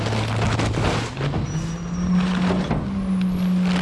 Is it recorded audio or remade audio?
recorded